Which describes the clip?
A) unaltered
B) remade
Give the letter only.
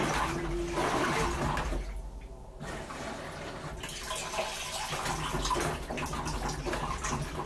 A